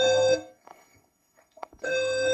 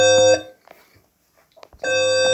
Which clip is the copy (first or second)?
first